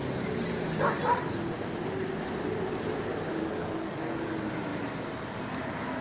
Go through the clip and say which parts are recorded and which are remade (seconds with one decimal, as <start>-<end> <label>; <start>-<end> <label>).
0.0-3.4 recorded; 3.4-4.3 remade; 4.3-6.0 recorded